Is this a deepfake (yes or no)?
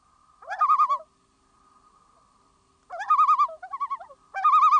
no